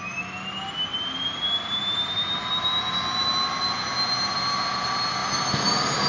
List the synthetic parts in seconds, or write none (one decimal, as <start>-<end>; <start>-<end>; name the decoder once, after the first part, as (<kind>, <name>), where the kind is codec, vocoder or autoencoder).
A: none